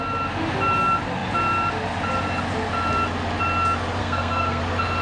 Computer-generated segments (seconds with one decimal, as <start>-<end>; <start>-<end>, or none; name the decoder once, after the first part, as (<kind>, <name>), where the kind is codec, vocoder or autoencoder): 4.0-4.6 (codec, SNAC)